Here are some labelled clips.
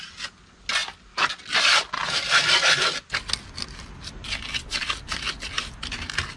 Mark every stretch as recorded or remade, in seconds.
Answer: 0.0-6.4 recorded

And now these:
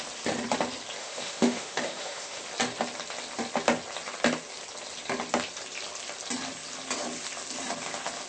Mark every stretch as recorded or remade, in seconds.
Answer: 0.0-1.0 recorded; 1.0-2.4 remade; 2.4-8.3 recorded

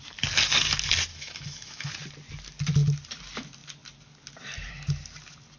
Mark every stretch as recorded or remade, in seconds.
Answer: 0.0-1.1 recorded; 1.1-1.9 remade; 1.9-5.6 recorded

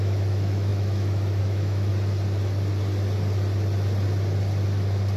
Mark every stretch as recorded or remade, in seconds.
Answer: 0.0-1.9 remade; 1.9-5.2 recorded

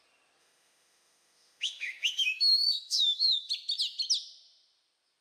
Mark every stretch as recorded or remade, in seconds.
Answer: 0.0-0.4 recorded; 0.4-3.5 remade; 3.5-5.2 recorded

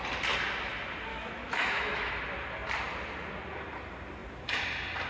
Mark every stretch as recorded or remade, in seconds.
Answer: 0.0-1.1 recorded; 1.1-2.1 remade; 2.1-5.1 recorded

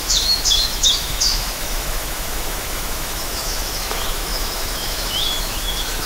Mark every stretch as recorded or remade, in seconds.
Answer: 0.0-6.1 remade

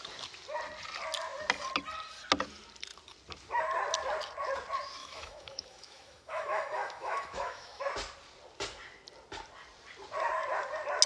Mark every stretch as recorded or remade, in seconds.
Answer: 0.0-5.0 recorded; 5.0-7.8 remade; 7.8-11.1 recorded